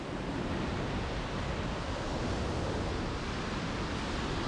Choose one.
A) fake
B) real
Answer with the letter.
B